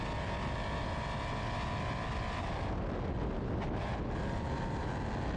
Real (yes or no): yes